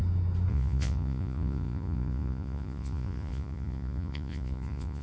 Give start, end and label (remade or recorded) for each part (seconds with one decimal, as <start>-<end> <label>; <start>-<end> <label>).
0.0-0.5 recorded; 0.5-5.0 remade

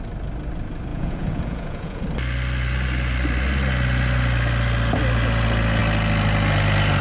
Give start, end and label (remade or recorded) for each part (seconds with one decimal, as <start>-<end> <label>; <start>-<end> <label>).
0.0-0.9 recorded; 0.9-2.0 remade; 2.0-7.0 recorded

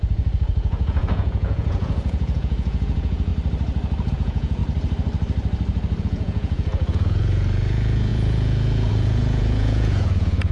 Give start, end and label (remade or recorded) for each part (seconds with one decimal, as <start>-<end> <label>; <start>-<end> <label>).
0.0-3.3 remade; 3.3-4.1 recorded; 4.1-4.6 remade; 4.6-6.0 recorded; 6.0-10.5 remade

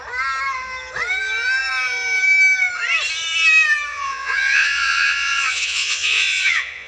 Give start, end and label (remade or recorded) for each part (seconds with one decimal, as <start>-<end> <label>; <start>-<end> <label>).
0.0-3.9 recorded; 3.9-6.9 remade

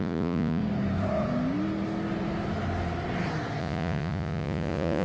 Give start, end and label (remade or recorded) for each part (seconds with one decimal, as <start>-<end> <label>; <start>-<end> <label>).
0.0-0.6 remade; 0.6-3.6 recorded; 3.6-5.0 remade

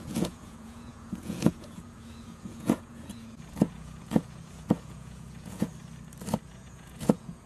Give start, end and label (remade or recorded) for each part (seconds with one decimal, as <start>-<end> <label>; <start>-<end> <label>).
0.0-5.7 remade; 5.7-6.5 recorded; 6.5-7.5 remade

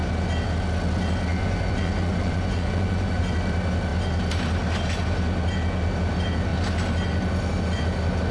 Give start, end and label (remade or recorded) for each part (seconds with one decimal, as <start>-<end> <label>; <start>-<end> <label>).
0.0-1.3 recorded; 1.3-3.2 remade; 3.2-8.3 recorded

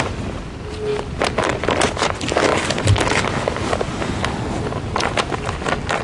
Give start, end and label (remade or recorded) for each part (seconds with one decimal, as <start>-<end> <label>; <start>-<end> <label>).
0.0-6.0 recorded